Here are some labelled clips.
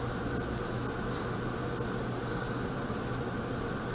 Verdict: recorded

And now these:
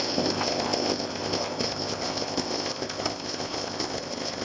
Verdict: remade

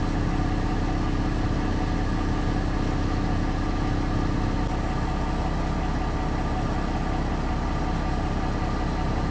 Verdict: recorded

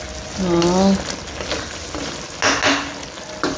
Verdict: recorded